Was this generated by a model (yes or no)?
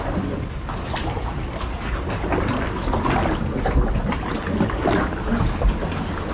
no